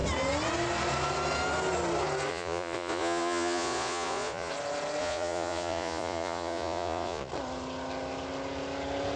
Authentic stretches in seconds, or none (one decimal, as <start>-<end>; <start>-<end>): 0.0-2.3; 4.5-5.0; 7.3-9.2